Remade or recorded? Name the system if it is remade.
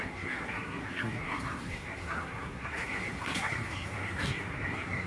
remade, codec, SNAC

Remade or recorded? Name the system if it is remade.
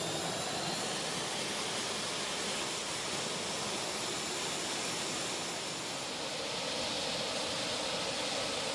recorded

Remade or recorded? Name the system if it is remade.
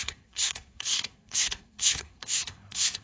remade, codec, SNAC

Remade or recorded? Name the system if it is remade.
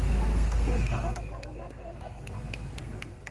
remade, codec, SNAC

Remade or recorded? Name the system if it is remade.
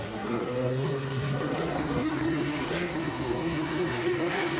remade, codec, SNAC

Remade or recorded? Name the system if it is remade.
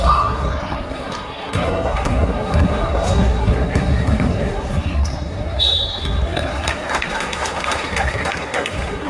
remade, codec, SNAC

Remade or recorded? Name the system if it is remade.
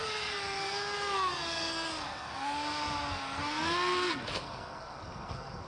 remade, codec, SNAC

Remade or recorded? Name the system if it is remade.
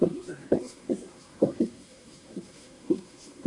remade, codec, SNAC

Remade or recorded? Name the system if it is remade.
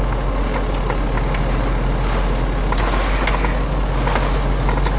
recorded